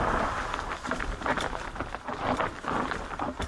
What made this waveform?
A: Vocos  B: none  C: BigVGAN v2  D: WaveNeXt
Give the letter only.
B